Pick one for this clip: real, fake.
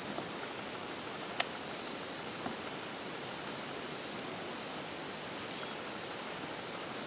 real